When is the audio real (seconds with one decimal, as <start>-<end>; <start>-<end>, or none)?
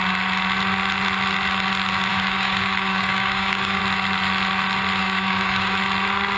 0.0-2.1; 3.8-5.0; 5.8-6.4